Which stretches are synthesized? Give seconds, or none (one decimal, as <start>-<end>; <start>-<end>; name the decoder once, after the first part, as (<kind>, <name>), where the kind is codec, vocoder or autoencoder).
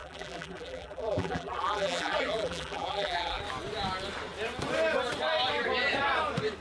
0.0-3.4 (vocoder, BigVGAN v2)